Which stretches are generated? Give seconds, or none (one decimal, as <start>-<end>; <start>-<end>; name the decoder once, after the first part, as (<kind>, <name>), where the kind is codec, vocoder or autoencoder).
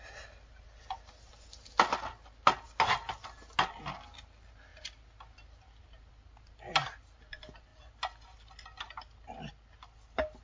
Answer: none